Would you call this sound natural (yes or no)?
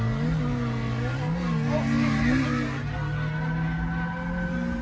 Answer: yes